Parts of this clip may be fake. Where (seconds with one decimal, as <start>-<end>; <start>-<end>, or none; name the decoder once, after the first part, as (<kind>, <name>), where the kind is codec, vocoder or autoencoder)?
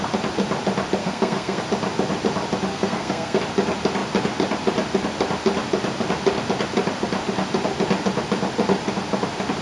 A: 1.0-1.6 (codec, SNAC); 2.7-3.4